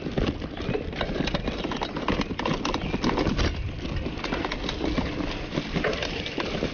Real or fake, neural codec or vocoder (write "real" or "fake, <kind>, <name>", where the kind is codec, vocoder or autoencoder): real